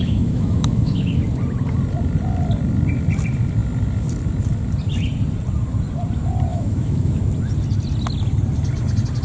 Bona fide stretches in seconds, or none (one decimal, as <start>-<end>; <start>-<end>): 1.2-6.5; 7.2-9.2